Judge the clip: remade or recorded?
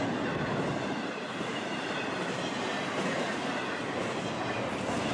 recorded